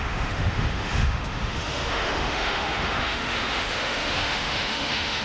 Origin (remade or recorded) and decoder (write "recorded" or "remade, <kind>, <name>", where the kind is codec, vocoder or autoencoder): remade, autoencoder, DAC-VAE